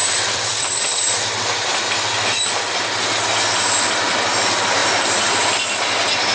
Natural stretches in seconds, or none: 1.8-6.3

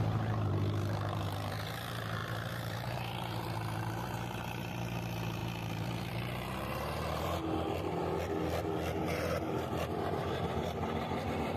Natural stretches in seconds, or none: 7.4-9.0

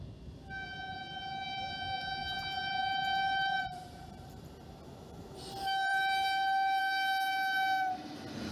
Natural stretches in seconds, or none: 0.0-2.2; 4.4-5.9; 6.8-8.5